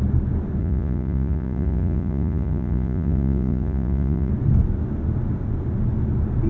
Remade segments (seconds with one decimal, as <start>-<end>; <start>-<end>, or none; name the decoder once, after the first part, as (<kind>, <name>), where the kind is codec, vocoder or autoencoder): 0.6-4.3 (vocoder, Vocos)